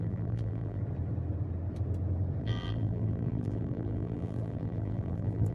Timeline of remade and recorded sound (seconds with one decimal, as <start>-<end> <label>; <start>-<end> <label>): 0.0-0.8 remade; 0.8-2.4 recorded; 2.4-5.5 remade